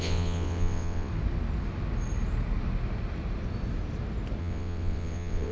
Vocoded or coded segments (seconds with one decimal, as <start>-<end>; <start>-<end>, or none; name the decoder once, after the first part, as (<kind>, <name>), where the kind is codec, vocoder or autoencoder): 0.0-1.1 (vocoder, WaveNeXt); 4.4-5.5